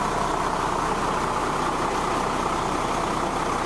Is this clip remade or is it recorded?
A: recorded